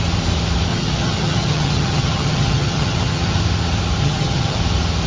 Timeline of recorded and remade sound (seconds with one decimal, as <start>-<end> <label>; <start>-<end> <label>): 0.0-0.7 recorded; 0.7-3.4 remade; 3.4-4.0 recorded; 4.0-4.6 remade; 4.6-5.1 recorded